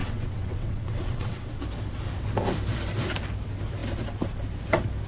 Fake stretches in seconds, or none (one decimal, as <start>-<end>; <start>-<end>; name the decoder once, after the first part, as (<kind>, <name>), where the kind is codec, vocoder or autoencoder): 0.0-1.6 (vocoder, WaveNeXt)